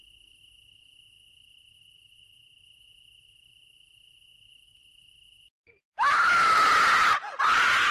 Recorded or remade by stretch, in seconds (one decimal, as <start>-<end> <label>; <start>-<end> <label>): 0.0-7.9 recorded